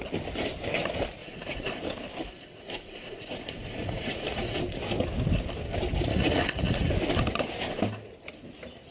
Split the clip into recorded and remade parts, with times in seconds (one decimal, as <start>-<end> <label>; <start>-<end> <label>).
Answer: 0.0-1.2 recorded; 1.2-1.8 remade; 1.8-2.2 recorded; 2.2-4.6 remade; 4.6-6.1 recorded; 6.1-6.9 remade; 6.9-8.9 recorded